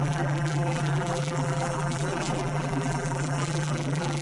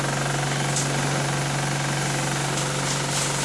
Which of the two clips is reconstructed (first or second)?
first